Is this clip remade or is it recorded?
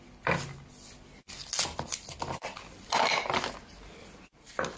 recorded